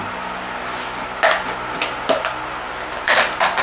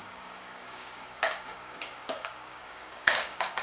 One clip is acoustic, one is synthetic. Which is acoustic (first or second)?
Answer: first